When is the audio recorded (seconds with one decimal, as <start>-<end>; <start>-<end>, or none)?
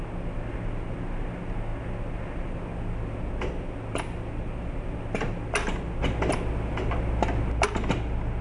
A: 0.0-8.4